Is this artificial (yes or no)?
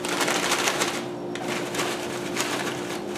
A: no